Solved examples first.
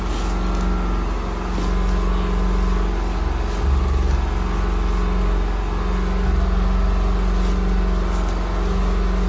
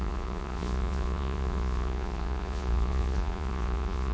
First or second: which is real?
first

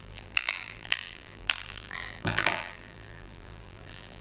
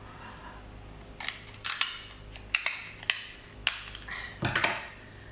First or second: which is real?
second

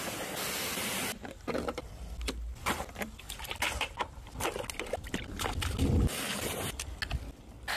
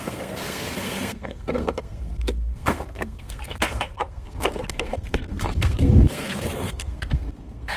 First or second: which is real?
first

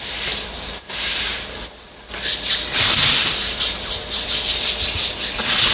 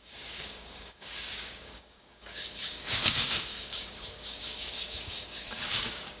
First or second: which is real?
first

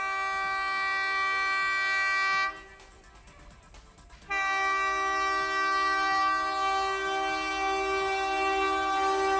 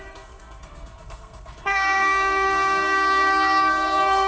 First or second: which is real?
first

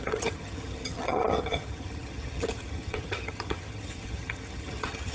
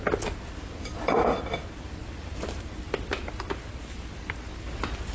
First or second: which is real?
second